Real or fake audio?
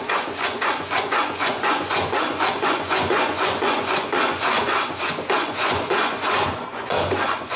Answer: fake